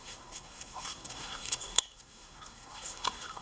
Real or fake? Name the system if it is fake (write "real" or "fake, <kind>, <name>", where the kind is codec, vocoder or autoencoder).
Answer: fake, codec, SNAC